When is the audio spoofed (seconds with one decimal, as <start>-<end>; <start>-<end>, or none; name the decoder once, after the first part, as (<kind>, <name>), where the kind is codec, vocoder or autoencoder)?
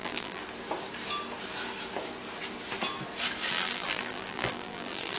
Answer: 0.0-0.4 (vocoder, BigVGAN v2); 3.5-5.2